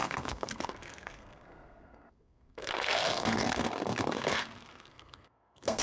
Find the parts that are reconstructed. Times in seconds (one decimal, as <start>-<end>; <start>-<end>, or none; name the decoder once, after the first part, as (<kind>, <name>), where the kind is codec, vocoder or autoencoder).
0.0-5.8 (codec, SNAC)